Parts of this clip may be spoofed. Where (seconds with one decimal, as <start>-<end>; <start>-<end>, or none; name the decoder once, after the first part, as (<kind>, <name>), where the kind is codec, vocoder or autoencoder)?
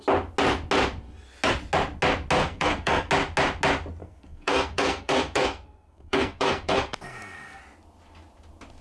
2.4-3.1 (codec, SNAC); 4.0-7.6